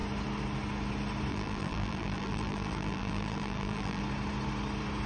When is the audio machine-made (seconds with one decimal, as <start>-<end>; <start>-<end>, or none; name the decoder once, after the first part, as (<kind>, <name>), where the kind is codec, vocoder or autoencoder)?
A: 1.3-4.0 (vocoder, BigVGAN v2)